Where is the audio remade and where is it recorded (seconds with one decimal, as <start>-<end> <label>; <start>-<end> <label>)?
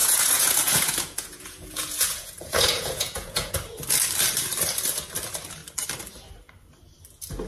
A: 0.0-3.5 remade; 3.5-7.5 recorded